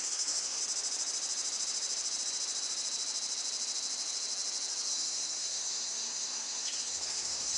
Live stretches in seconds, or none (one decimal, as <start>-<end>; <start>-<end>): 0.6-4.9